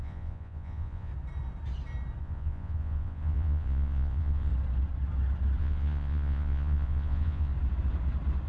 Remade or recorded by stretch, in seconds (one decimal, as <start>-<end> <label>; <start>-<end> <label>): 0.0-1.1 remade; 1.1-2.2 recorded; 2.2-4.5 remade; 4.5-5.6 recorded; 5.6-7.5 remade; 7.5-8.5 recorded